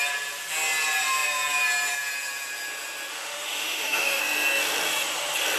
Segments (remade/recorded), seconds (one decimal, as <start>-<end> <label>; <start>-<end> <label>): 0.0-3.1 recorded; 3.1-4.2 remade; 4.2-5.6 recorded